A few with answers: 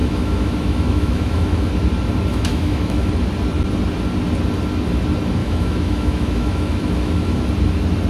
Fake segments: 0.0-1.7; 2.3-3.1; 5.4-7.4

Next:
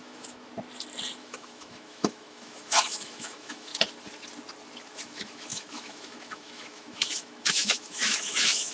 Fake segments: 0.0-0.5; 1.2-3.7; 4.8-8.7

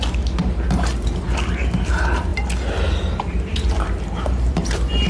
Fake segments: none

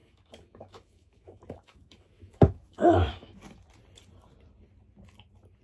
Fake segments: 0.0-3.4

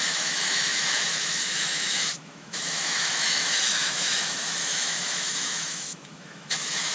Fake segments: 0.0-6.9

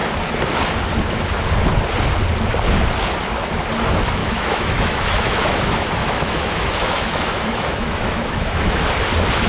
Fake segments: 4.2-8.8

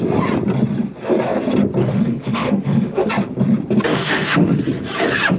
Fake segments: 1.8-3.1; 3.9-4.6